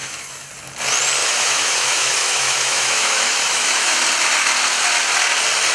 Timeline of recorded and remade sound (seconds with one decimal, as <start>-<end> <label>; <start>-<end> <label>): 0.0-0.5 remade; 0.5-1.2 recorded; 1.2-4.0 remade; 4.0-5.7 recorded